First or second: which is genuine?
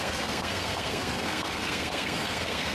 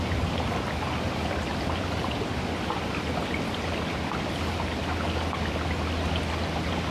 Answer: second